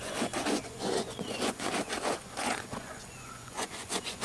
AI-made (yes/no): yes